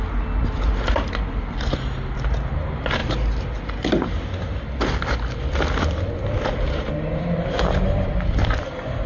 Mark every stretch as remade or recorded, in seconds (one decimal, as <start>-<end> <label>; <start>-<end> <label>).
0.0-9.1 recorded